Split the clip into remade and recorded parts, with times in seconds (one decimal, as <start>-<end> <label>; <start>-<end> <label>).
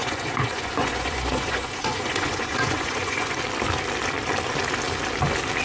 0.0-3.4 remade; 3.4-5.6 recorded